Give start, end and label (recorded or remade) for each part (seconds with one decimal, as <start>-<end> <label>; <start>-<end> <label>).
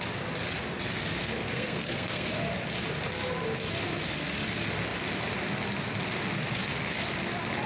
0.0-1.2 recorded; 1.2-2.3 remade; 2.3-7.7 recorded